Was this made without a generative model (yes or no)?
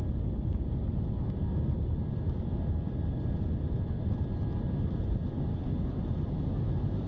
yes